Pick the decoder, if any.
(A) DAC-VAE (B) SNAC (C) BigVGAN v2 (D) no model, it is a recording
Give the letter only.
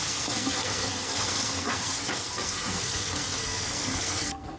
B